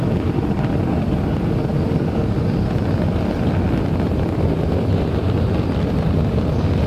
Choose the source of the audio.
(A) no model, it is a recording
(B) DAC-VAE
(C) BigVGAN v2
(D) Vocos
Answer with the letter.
A